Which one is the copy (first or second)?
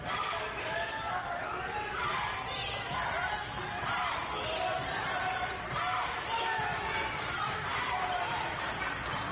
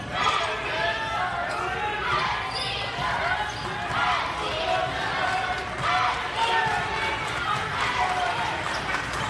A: first